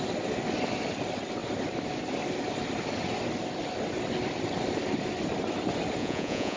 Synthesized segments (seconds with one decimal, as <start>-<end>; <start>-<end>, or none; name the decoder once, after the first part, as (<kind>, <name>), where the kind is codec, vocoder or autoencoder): 6.0-6.6 (vocoder, Vocos)